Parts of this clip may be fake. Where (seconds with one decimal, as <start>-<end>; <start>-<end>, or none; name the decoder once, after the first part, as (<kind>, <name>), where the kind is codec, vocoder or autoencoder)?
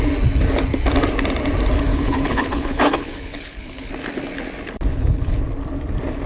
1.9-3.9 (codec, HILCodec); 4.9-5.4